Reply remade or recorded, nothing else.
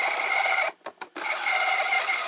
recorded